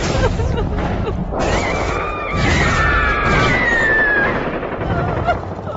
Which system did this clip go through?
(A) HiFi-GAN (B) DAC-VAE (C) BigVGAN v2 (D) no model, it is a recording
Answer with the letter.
C